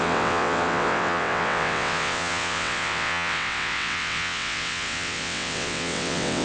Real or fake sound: fake